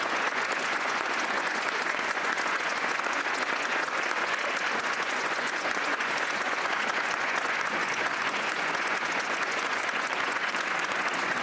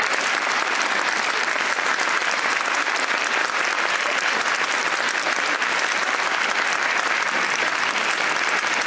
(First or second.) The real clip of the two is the second